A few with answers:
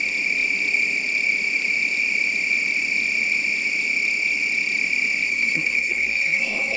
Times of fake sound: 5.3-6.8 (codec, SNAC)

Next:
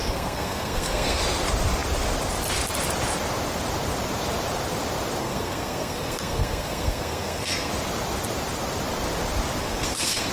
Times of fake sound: 0.0-1.2 (codec, SNAC); 5.2-7.7; 9.6-10.3

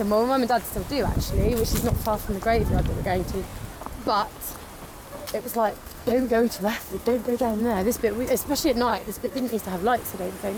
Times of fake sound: 5.4-7.6 (codec, SNAC); 8.9-9.6

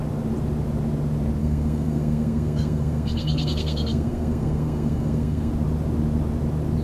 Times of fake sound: 1.4-5.5 (codec, SNAC)

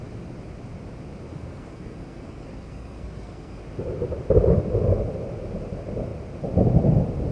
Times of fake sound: 1.3-3.6 (codec, SNAC)

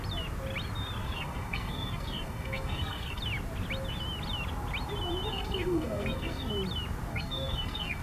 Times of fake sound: 1.0-3.2 (codec, SNAC); 5.3-6.5; 7.1-8.0